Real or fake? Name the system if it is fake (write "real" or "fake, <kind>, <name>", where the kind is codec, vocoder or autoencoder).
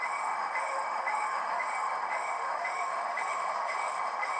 fake, autoencoder, DAC-VAE